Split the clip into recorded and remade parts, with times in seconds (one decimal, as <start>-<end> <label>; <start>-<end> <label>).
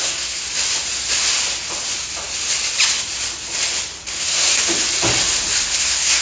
0.0-0.4 remade; 0.4-4.1 recorded; 4.1-4.5 remade; 4.5-5.8 recorded; 5.8-6.2 remade